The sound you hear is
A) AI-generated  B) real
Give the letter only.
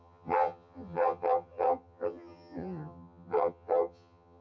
A